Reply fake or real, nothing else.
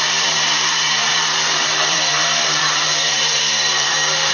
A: fake